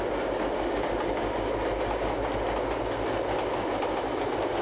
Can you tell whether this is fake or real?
real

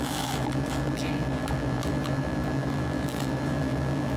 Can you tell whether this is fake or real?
fake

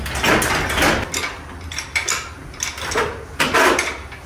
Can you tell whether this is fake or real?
real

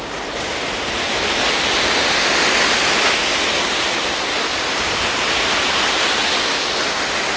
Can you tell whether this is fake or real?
real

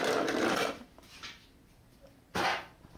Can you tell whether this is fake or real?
real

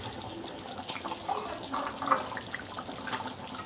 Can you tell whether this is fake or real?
real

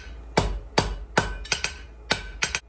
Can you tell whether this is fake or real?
real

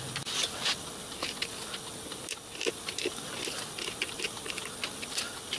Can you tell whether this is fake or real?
real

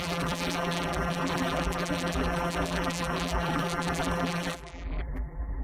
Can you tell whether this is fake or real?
fake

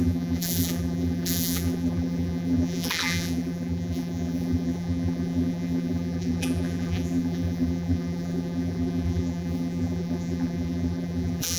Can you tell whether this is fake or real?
fake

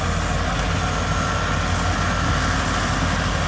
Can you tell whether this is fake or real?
real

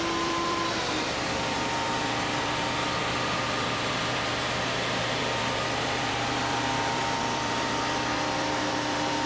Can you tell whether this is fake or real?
fake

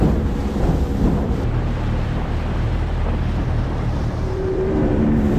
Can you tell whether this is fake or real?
fake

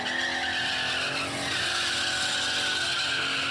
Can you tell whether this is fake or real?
real